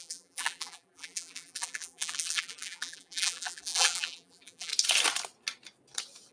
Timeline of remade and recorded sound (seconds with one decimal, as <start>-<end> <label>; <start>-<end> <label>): 0.0-4.7 remade; 4.7-6.3 recorded